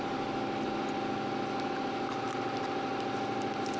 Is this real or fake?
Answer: real